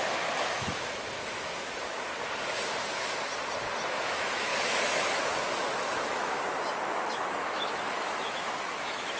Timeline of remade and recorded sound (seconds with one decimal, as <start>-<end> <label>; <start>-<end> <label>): 0.0-2.1 remade; 2.1-2.8 recorded; 2.8-3.3 remade; 3.3-3.9 recorded; 3.9-9.2 remade